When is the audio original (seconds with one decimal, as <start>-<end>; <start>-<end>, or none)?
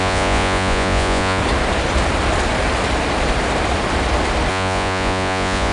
1.4-4.5